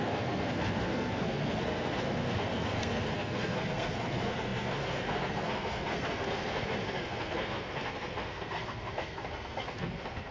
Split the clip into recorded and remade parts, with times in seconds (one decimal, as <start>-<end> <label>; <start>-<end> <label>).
0.0-10.3 remade